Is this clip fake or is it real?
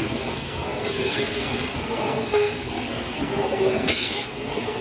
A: fake